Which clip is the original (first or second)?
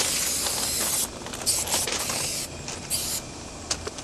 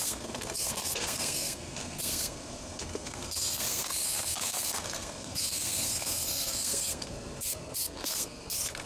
first